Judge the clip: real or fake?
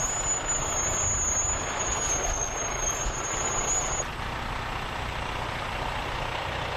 real